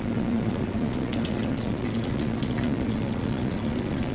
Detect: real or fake fake